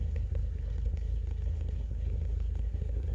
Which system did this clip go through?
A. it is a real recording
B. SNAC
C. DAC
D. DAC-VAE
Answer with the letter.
B